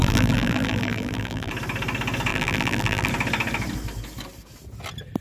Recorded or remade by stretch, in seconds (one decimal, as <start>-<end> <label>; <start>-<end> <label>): 0.0-1.5 remade; 1.5-2.3 recorded; 2.3-3.1 remade; 3.1-5.2 recorded